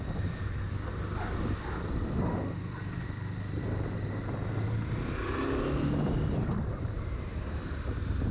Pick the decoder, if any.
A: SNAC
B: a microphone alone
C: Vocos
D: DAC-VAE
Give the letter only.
B